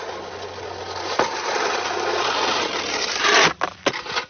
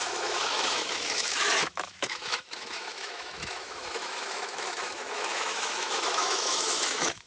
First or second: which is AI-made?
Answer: second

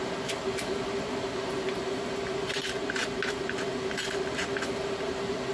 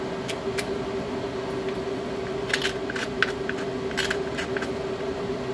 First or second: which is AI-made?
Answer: first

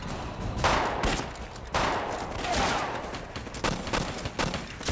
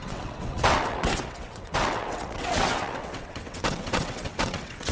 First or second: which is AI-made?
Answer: second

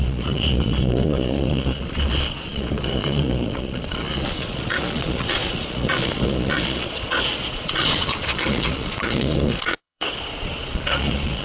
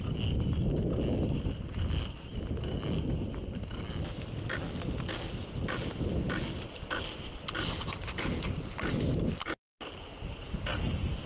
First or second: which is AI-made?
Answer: first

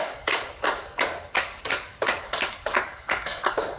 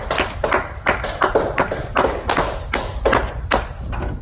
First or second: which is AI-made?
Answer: first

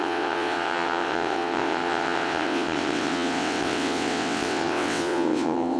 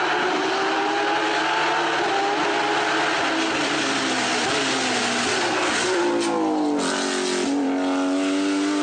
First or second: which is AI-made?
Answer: first